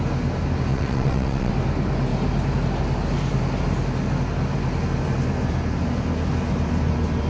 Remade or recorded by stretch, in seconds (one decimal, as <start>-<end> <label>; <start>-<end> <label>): 0.0-0.7 recorded; 0.7-1.5 remade; 1.5-7.3 recorded